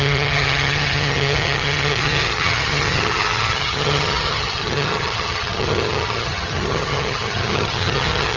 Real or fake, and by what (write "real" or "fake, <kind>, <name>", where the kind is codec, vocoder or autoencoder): fake, vocoder, HiFi-GAN